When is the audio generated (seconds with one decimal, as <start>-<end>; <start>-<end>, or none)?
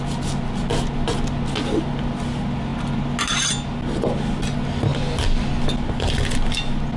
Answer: none